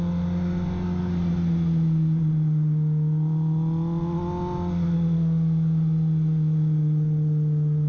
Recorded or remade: recorded